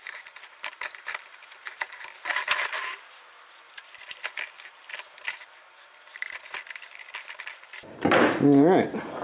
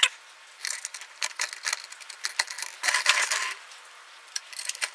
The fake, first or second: first